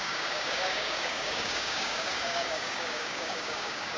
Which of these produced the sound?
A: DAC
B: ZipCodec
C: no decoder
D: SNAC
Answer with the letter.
A